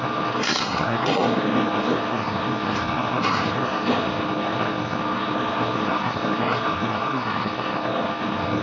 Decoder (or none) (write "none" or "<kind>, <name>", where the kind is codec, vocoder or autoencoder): codec, SNAC